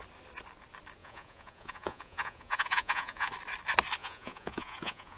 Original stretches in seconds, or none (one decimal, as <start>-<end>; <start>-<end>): 0.0-1.0; 3.3-4.0